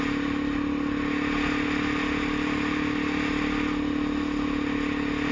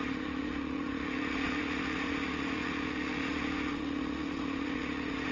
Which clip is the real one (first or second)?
first